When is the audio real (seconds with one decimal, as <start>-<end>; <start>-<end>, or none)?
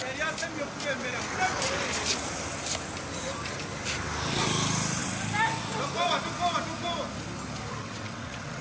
0.0-7.8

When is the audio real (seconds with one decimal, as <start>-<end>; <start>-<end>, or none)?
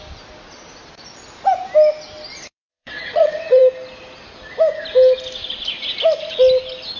0.0-2.7; 3.6-7.0